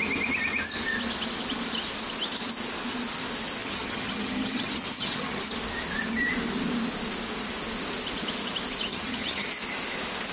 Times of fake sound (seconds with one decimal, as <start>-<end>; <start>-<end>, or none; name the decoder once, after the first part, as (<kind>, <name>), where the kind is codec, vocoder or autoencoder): 3.6-5.5 (vocoder, HiFi-GAN); 8.9-9.5